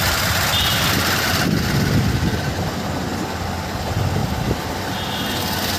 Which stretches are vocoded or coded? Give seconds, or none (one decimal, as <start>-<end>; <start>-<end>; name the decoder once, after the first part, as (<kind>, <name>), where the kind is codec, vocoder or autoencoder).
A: none

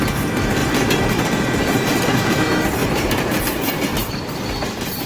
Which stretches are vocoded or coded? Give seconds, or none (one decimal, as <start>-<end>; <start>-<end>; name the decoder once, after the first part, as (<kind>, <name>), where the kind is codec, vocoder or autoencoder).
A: 0.6-2.0 (vocoder, BigVGAN v2); 2.8-3.4

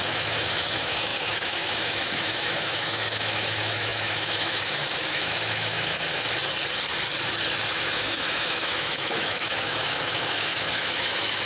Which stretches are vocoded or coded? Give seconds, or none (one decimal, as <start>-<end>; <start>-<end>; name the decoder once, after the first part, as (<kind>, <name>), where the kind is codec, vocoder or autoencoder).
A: 0.0-6.1 (autoencoder, DAC-VAE); 7.7-11.5